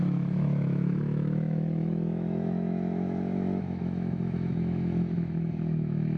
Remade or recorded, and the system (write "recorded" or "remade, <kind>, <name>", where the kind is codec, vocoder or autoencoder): remade, autoencoder, DAC-VAE